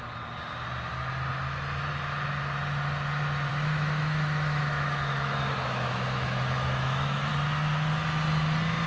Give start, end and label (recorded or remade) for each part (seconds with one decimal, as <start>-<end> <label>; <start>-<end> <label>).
0.0-3.5 recorded; 3.5-7.3 remade; 7.3-8.9 recorded